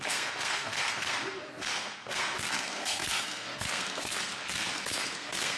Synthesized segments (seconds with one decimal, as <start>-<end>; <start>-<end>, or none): 0.0-5.6